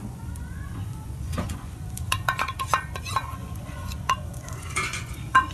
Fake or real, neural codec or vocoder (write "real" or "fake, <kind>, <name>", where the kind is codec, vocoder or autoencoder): fake, vocoder, Vocos